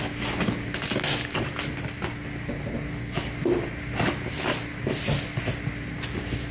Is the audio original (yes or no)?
yes